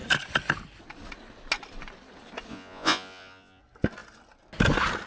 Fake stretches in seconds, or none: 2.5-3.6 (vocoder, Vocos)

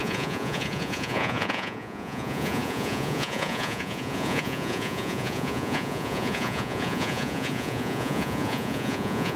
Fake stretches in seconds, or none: 0.0-9.4 (vocoder, Vocos)